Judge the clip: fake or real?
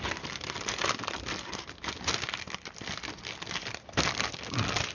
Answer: real